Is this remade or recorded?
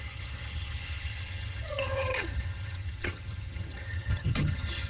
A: remade